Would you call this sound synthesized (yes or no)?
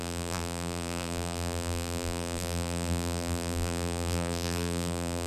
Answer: yes